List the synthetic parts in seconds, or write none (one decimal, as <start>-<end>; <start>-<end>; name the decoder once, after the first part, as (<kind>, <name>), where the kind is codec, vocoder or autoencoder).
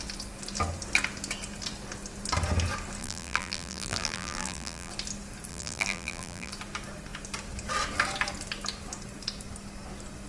3.0-4.9 (vocoder, BigVGAN v2); 5.5-6.5